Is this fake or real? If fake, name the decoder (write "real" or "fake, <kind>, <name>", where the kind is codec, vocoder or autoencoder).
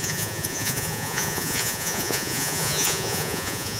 fake, vocoder, Vocos